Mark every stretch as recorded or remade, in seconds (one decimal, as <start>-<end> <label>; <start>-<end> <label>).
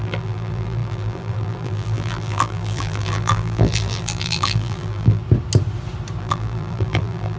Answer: 0.0-5.2 remade; 5.2-6.2 recorded; 6.2-7.4 remade